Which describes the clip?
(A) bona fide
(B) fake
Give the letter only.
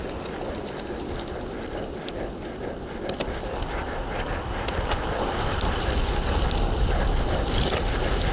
A